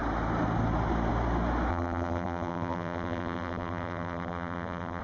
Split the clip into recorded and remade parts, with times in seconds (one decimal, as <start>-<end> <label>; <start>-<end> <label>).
0.0-1.7 recorded; 1.7-5.0 remade

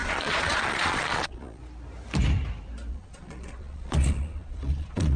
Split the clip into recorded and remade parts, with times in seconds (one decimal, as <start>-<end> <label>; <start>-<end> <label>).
0.0-1.6 remade; 1.6-2.9 recorded; 2.9-5.2 remade

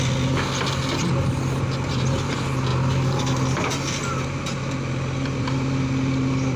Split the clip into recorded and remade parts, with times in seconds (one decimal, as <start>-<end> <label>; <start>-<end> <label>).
0.0-6.6 recorded